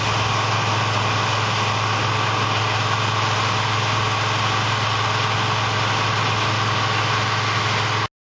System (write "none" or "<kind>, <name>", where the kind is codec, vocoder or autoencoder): none